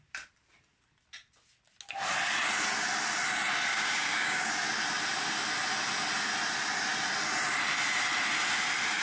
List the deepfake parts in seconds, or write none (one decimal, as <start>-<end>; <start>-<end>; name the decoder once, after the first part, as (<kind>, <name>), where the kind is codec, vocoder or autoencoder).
3.7-4.5 (codec, DAC)